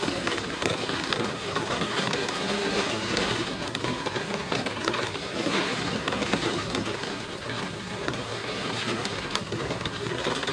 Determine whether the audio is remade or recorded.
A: remade